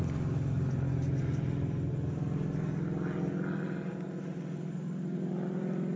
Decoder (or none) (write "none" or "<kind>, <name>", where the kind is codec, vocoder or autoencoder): none